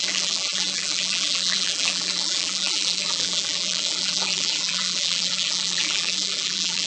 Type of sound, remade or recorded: remade